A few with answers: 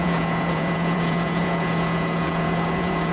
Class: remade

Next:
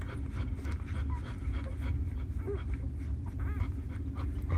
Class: recorded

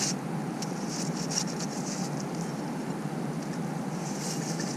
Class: recorded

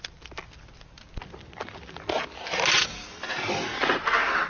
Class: recorded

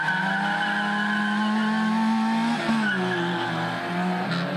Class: recorded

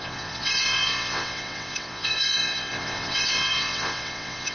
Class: remade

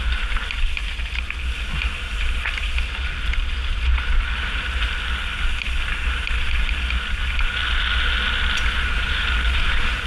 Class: recorded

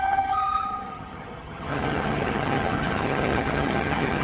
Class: remade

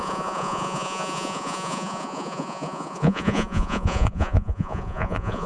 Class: remade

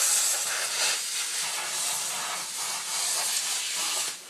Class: recorded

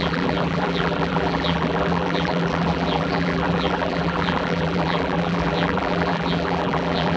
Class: remade